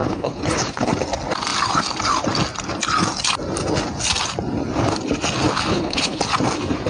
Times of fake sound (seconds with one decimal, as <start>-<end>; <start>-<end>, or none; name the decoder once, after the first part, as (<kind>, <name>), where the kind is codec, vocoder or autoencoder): 0.0-0.9 (codec, HILCodec); 5.7-6.2

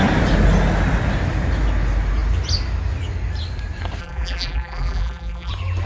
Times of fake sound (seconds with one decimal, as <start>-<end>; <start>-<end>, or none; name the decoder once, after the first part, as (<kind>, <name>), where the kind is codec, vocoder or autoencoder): 4.0-5.5 (vocoder, BigVGAN v2)

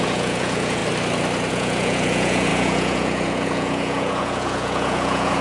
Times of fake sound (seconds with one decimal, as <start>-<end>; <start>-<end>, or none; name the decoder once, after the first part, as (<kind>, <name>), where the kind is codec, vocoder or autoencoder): 0.0-0.8 (vocoder, Vocos); 1.5-5.4

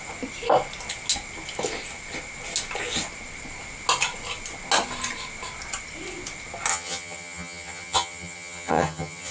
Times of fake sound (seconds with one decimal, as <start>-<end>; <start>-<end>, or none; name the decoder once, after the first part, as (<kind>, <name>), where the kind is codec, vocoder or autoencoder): 6.7-9.3 (vocoder, HiFi-GAN)

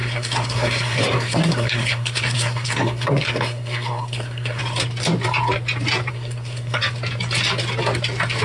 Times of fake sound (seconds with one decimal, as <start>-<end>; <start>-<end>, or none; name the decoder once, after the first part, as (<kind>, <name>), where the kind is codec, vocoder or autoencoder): 0.0-4.6 (codec, SNAC); 6.1-6.8

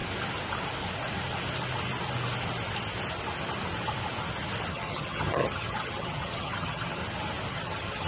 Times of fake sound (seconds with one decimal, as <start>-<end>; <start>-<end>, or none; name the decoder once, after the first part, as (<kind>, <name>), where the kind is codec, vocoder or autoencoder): 4.7-7.0 (vocoder, HiFi-GAN); 7.5-8.1

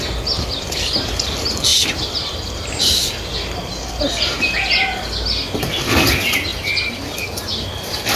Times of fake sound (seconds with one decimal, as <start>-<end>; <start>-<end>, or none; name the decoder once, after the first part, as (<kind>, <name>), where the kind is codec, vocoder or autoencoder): none